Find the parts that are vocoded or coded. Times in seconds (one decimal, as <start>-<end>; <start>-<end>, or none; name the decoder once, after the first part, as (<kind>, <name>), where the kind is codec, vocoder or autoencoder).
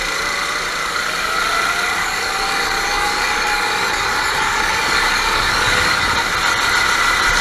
0.8-1.4 (codec, DAC); 2.0-6.1